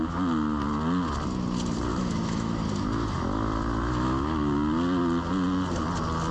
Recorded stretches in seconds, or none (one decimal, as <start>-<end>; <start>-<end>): 0.0-1.9; 2.6-3.8; 4.5-6.3